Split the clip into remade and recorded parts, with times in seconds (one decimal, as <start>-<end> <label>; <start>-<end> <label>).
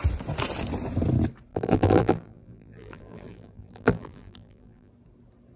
0.0-1.5 recorded; 1.5-4.9 remade; 4.9-5.6 recorded